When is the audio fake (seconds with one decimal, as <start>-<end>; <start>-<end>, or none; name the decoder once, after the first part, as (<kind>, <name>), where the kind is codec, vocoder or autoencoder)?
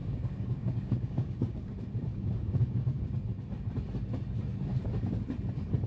0.0-1.7 (codec, DAC); 2.1-3.2